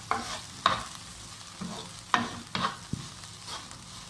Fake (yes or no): no